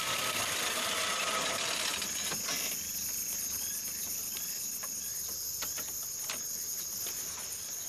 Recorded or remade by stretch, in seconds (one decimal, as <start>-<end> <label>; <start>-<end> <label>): 0.0-7.9 remade